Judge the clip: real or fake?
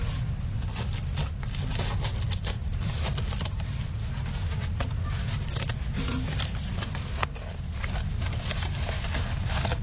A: real